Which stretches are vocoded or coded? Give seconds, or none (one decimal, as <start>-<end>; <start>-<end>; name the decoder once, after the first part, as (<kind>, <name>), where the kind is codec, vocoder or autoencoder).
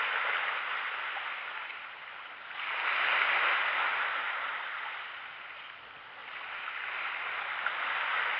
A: none